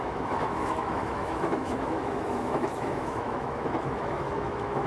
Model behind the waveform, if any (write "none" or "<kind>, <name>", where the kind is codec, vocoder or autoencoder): autoencoder, DAC-VAE